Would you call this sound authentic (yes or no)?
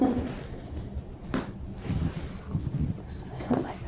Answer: yes